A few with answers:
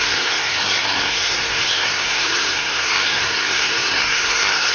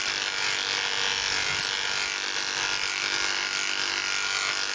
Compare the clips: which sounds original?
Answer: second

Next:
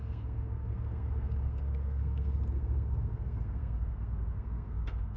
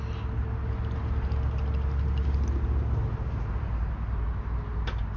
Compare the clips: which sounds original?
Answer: second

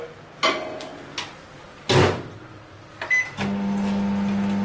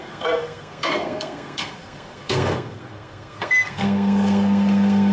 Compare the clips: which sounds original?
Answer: first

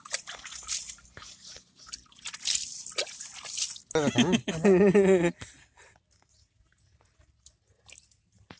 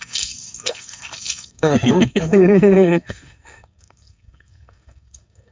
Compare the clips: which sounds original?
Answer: first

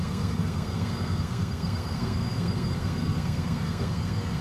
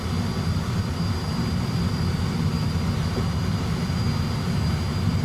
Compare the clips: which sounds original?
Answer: second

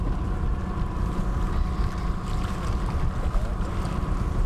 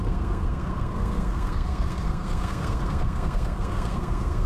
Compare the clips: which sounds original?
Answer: first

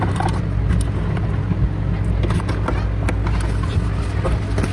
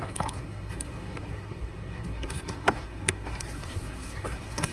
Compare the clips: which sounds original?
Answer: first